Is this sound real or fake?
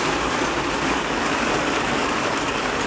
fake